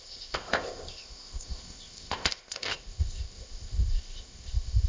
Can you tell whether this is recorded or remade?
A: remade